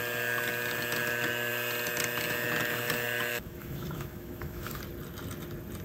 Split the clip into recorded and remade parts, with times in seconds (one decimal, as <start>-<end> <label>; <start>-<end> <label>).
0.0-3.3 recorded; 3.3-4.8 remade; 4.8-5.8 recorded